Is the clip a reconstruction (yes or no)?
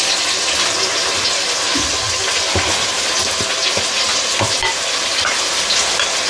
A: no